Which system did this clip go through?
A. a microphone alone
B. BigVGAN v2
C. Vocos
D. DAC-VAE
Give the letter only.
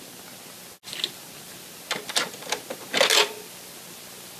A